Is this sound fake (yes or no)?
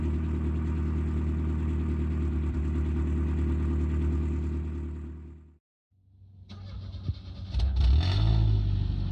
no